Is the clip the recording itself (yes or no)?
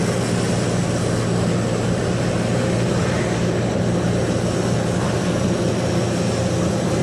yes